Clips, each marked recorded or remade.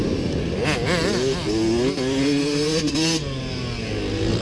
recorded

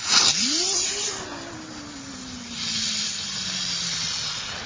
recorded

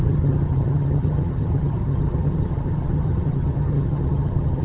remade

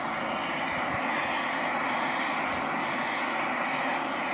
recorded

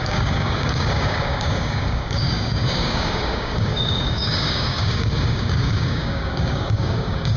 remade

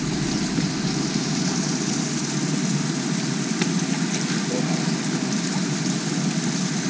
recorded